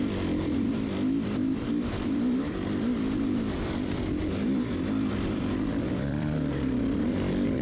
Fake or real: fake